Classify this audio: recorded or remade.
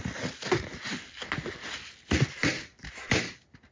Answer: recorded